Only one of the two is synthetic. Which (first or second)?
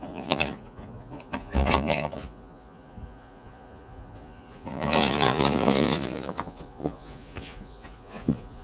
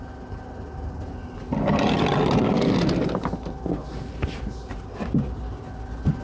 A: first